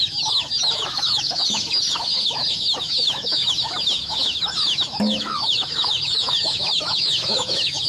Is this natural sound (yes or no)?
no